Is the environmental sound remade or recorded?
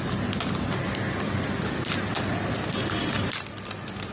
recorded